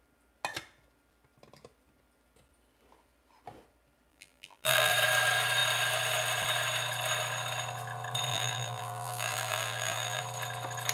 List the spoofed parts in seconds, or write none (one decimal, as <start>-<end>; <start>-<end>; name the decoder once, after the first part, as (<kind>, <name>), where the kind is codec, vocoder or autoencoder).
4.1-4.9 (vocoder, BigVGAN v2); 8.3-10.2